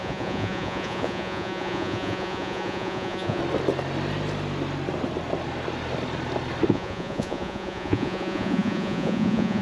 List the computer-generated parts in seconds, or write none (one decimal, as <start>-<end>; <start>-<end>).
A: 0.0-3.4; 6.7-9.6